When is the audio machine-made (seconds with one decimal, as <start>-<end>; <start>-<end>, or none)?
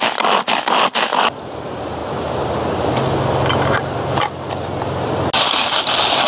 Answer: none